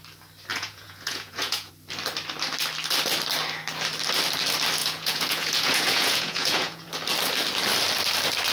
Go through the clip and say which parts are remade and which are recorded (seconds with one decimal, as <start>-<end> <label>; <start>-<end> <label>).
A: 0.0-0.5 recorded; 0.5-1.7 remade; 1.7-4.8 recorded; 4.8-6.9 remade; 6.9-8.5 recorded